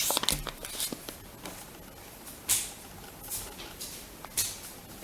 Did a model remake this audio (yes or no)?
no